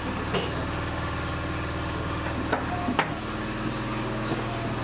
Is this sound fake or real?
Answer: real